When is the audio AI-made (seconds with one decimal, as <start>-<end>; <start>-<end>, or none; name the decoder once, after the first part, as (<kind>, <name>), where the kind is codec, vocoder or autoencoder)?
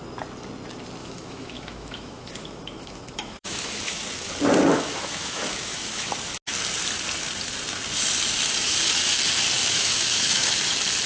1.0-4.0 (autoencoder, DAC-VAE); 4.7-6.1; 9.6-10.7